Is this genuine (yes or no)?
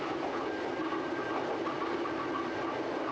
yes